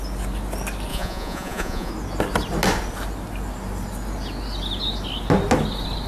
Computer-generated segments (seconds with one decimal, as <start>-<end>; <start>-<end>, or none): 0.9-1.9

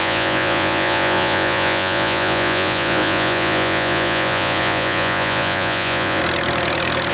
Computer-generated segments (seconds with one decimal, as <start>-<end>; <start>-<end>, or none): 0.0-6.2

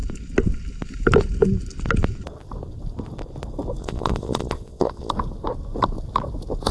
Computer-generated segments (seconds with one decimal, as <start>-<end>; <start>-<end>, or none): 3.8-5.1

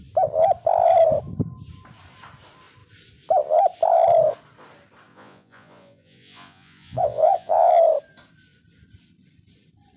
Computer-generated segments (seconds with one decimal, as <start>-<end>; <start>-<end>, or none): 5.1-7.7

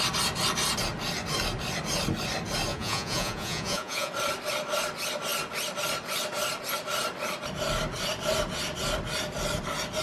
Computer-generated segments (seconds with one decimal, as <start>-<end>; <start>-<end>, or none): 2.7-4.1